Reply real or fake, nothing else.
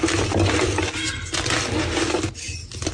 real